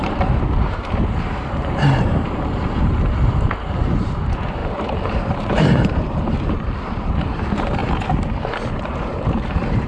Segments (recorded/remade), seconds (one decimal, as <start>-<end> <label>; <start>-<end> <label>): 0.0-7.8 remade; 7.8-8.7 recorded; 8.7-9.9 remade